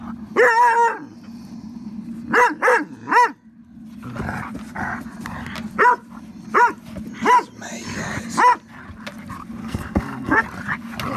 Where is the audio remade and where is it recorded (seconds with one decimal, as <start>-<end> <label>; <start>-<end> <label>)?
0.0-9.6 recorded; 9.6-10.4 remade; 10.4-11.2 recorded